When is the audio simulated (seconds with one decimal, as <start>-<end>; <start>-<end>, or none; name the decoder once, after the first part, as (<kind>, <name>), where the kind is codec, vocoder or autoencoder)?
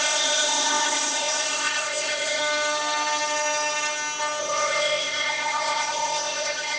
0.0-2.4 (codec, ZipCodec); 4.4-6.8